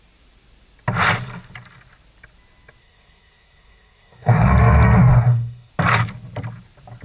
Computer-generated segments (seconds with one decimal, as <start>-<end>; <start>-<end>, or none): 2.8-4.5; 5.1-5.7